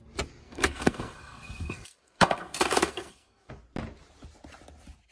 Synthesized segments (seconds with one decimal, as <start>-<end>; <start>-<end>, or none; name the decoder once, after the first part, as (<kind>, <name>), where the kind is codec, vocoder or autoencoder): 0.4-3.5 (codec, SNAC)